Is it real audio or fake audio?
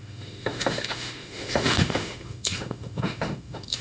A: fake